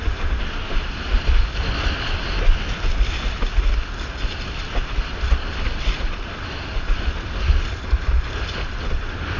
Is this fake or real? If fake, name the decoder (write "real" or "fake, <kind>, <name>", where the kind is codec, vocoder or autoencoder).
real